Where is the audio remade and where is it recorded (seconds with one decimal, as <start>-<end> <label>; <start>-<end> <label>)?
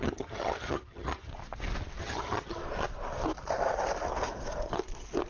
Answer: 0.0-1.3 remade; 1.3-2.0 recorded; 2.0-2.6 remade; 2.6-5.3 recorded